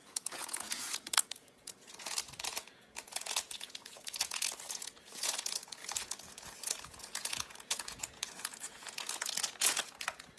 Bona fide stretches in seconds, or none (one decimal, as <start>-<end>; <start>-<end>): none